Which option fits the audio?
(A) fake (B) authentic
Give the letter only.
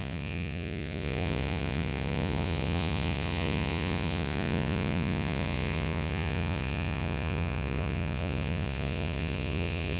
A